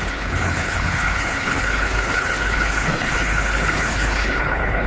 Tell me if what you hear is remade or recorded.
remade